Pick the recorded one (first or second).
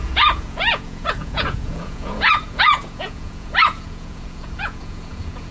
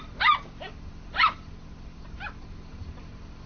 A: second